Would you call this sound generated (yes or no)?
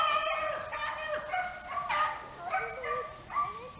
no